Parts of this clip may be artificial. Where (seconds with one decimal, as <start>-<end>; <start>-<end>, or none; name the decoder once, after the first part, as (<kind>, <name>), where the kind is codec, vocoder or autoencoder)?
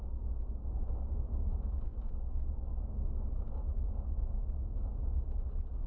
none